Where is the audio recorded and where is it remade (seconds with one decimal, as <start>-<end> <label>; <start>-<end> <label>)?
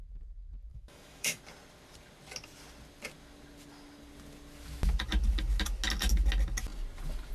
0.0-0.7 recorded; 0.7-1.4 remade; 1.4-7.3 recorded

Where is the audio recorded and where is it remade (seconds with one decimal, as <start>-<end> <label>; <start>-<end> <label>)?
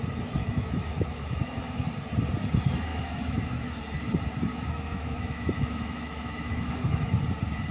0.0-0.4 recorded; 0.4-1.9 remade; 1.9-2.9 recorded; 2.9-3.8 remade; 3.8-4.5 recorded; 4.5-7.1 remade; 7.1-7.7 recorded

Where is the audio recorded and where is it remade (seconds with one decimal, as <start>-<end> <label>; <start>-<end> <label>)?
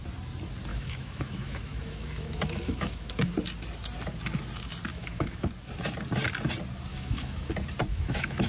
0.0-0.7 recorded; 0.7-3.3 remade; 3.3-4.9 recorded; 4.9-5.5 remade; 5.5-6.9 recorded; 6.9-7.5 remade; 7.5-7.9 recorded; 7.9-8.5 remade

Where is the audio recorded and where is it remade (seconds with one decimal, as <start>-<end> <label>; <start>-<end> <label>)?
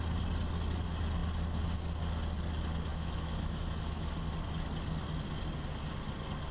0.0-2.9 recorded; 2.9-4.1 remade; 4.1-6.5 recorded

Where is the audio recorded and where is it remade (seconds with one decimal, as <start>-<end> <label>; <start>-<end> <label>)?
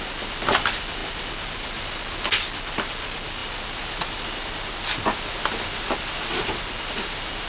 0.0-7.5 recorded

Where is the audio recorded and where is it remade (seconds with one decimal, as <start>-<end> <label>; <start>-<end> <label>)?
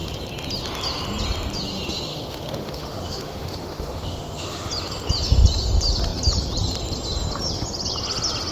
0.0-1.7 recorded; 1.7-4.7 remade; 4.7-8.5 recorded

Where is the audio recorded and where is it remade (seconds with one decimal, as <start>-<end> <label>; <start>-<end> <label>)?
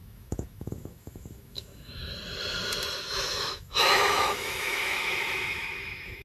0.0-2.0 remade; 2.0-3.0 recorded; 3.0-6.2 remade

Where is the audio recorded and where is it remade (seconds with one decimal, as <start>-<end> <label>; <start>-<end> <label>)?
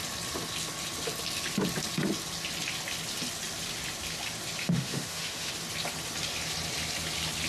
0.0-4.6 recorded; 4.6-5.5 remade; 5.5-7.5 recorded